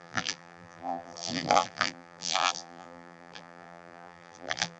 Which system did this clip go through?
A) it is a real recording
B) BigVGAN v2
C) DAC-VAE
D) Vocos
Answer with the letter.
B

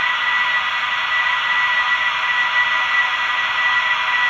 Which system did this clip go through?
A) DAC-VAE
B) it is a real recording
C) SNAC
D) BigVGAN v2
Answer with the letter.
B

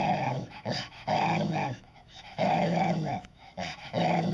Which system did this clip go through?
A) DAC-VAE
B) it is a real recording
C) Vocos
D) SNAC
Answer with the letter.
A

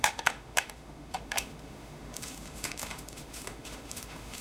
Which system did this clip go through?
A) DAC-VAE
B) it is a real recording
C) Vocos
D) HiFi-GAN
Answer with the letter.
A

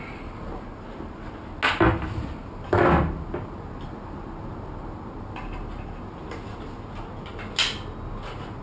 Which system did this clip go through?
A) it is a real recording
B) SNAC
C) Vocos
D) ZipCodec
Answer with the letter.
A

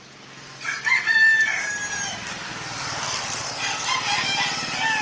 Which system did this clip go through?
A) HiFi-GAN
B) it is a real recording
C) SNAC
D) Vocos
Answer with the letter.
B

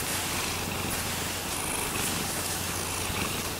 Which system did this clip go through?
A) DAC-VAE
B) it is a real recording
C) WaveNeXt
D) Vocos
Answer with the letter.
B